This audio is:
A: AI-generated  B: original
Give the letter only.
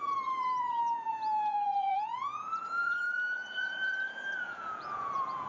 A